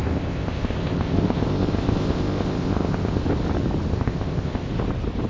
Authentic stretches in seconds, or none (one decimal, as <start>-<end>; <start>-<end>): 3.2-3.9; 4.7-5.3